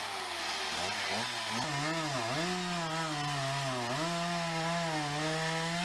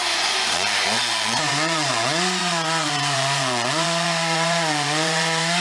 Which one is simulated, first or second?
second